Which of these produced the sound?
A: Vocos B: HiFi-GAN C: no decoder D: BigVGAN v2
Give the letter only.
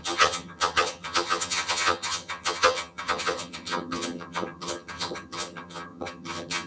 B